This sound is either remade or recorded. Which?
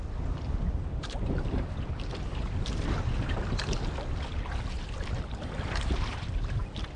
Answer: recorded